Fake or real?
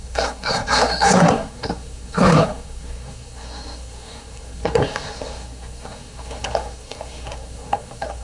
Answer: fake